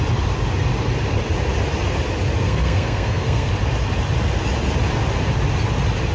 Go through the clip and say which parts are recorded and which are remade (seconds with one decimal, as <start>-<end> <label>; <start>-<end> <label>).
0.0-2.4 recorded; 2.4-3.5 remade; 3.5-6.1 recorded